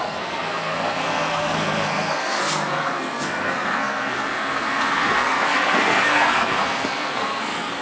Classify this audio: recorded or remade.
remade